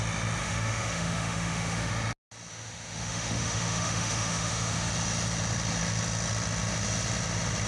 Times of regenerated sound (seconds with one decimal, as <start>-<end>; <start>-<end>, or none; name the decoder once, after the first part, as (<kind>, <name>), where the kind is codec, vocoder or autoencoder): 0.4-1.9 (autoencoder, DAC-VAE); 2.5-4.9